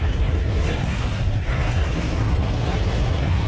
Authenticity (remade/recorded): remade